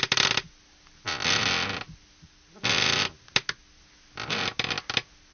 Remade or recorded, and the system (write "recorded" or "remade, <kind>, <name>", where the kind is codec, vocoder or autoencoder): recorded